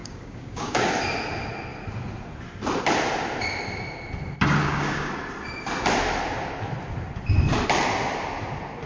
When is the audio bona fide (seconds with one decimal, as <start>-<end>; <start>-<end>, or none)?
0.9-4.6; 5.1-8.9